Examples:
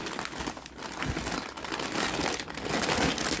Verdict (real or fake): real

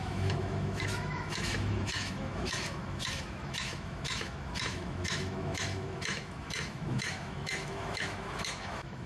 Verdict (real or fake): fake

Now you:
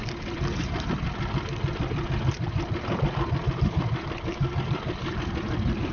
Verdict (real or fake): fake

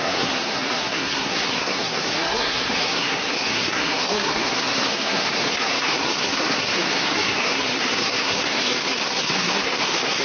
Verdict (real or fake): fake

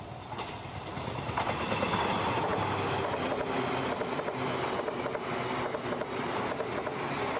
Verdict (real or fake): real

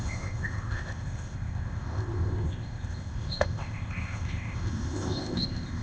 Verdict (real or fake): fake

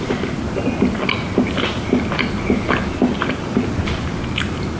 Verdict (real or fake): real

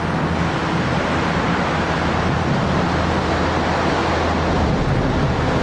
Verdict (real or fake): real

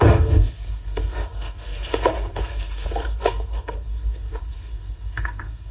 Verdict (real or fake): fake